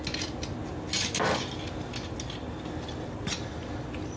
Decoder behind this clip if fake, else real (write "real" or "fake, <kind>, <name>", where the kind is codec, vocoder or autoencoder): real